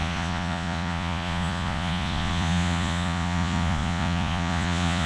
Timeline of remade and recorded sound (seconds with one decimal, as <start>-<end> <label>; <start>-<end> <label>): 0.0-5.1 remade